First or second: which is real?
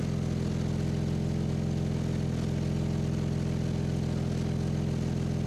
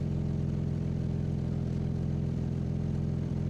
first